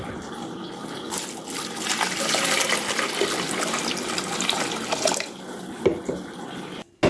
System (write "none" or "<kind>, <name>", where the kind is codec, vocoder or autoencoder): none